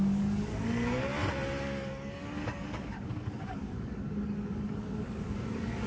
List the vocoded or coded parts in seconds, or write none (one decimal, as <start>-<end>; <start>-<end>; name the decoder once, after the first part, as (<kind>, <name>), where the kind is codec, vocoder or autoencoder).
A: 0.0-1.1 (codec, DAC); 1.6-5.9